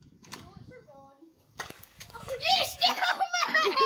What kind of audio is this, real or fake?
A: fake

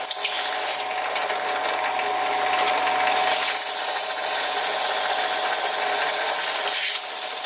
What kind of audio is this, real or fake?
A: real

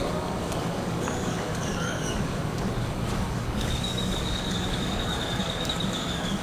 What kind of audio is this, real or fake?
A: fake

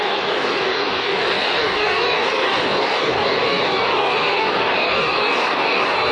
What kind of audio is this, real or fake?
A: fake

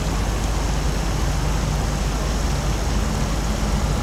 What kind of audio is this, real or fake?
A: real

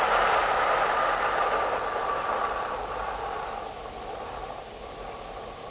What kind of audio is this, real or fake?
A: real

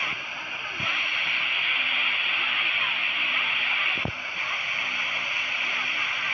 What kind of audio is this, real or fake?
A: real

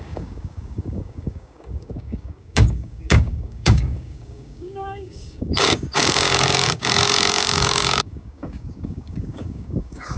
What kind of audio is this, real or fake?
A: fake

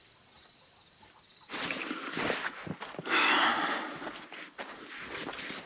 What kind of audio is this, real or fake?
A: real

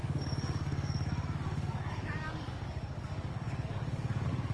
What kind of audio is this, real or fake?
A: fake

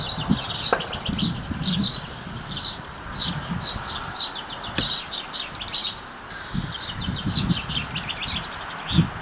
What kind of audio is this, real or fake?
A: real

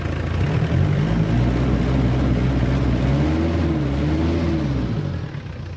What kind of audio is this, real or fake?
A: real